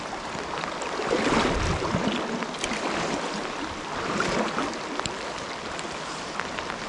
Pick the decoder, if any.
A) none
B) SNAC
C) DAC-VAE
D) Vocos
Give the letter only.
A